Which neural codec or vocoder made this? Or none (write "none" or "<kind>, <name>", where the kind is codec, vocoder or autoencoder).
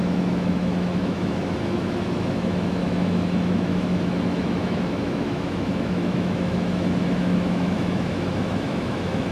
autoencoder, DAC-VAE